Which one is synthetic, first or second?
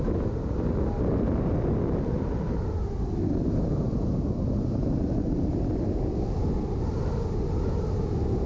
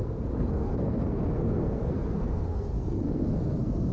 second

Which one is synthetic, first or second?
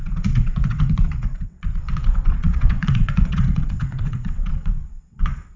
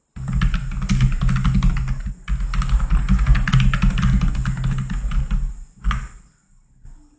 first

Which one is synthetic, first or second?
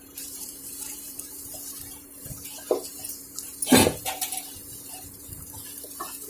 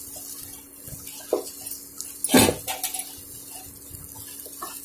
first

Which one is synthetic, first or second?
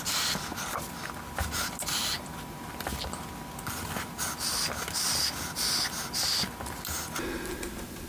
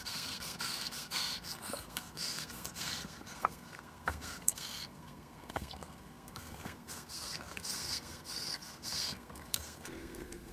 second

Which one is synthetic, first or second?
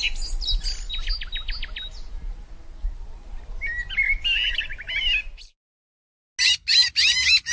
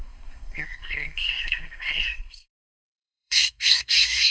second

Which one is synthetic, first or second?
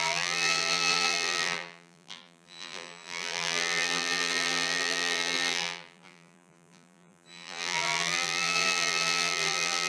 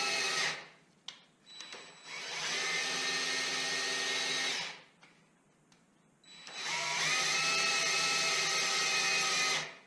first